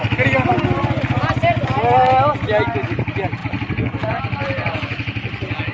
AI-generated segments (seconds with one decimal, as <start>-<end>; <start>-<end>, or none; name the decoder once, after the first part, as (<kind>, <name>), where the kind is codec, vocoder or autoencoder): none